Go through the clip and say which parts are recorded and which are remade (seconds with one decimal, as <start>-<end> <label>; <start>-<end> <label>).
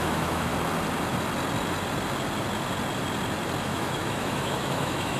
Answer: 0.0-0.5 remade; 0.5-3.6 recorded; 3.6-5.2 remade